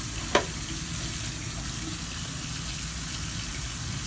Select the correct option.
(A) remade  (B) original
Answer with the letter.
B